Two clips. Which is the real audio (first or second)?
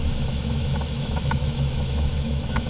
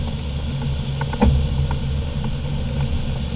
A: second